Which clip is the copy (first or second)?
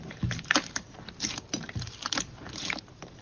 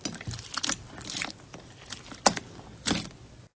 first